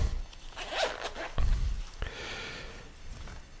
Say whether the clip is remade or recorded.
recorded